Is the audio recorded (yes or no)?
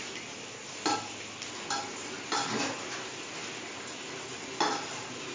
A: yes